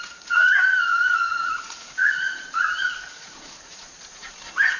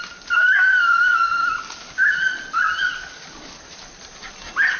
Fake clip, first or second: first